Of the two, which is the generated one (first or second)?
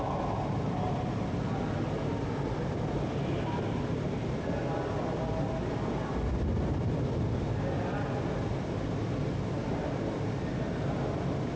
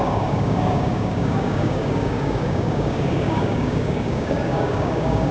second